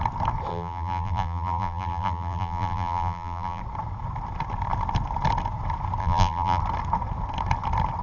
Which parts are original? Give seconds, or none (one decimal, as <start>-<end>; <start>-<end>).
0.0-0.5; 3.6-6.0; 6.6-8.0